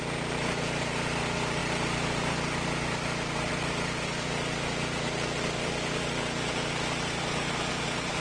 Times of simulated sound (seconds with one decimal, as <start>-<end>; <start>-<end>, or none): none